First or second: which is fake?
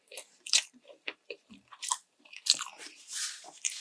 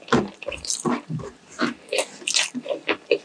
first